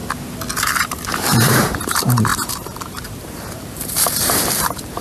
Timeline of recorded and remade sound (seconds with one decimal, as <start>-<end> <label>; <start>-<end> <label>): 0.0-0.6 recorded; 0.6-5.0 remade